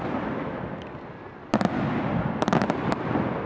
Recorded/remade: recorded